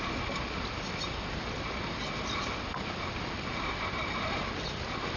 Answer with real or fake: real